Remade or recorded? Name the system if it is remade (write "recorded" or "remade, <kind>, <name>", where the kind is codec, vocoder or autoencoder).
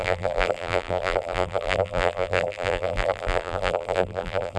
remade, vocoder, BigVGAN v2